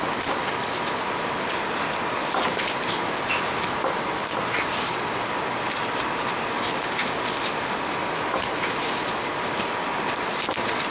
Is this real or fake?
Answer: real